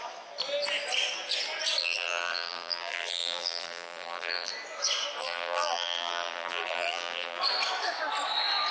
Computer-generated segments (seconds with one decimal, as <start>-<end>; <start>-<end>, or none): 1.8-4.5; 5.2-7.4